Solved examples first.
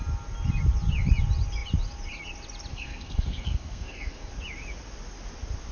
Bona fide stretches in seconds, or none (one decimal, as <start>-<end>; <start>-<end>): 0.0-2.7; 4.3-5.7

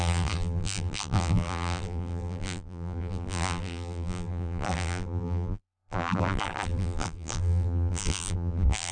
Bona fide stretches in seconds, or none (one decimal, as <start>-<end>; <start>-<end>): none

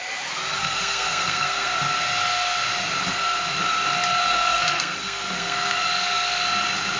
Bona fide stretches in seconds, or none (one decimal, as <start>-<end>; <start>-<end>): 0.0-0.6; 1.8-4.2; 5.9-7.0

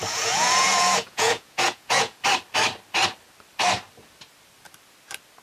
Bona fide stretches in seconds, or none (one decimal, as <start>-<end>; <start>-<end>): 2.2-5.4

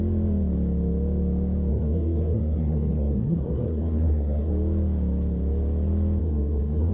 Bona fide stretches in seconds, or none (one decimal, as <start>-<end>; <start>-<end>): 0.0-1.7; 4.5-6.2